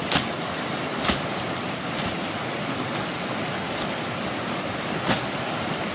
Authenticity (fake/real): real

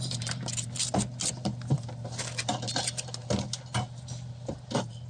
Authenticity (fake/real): real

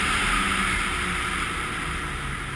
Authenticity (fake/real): real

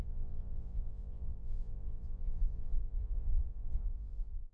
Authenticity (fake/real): fake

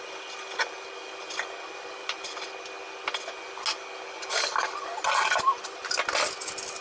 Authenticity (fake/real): real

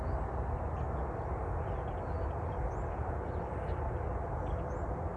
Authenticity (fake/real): real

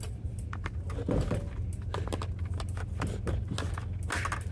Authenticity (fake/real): real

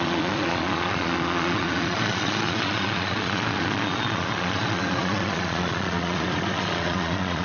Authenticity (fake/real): fake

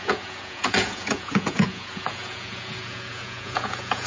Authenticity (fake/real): fake